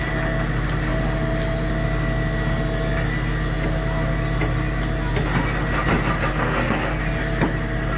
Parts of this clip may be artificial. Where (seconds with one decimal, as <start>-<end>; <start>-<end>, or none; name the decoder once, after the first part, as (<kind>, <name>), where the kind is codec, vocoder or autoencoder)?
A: 6.3-7.0 (codec, SNAC)